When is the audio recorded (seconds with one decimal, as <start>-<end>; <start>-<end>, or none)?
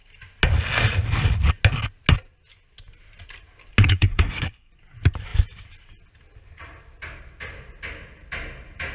0.0-3.8; 4.7-8.9